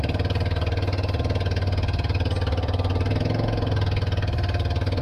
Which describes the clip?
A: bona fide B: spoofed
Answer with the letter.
A